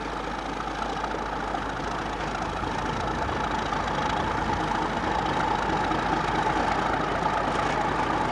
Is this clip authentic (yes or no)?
yes